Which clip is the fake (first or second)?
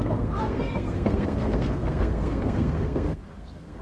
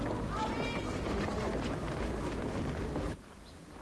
first